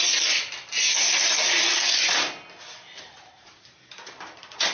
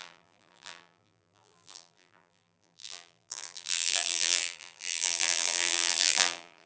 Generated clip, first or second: second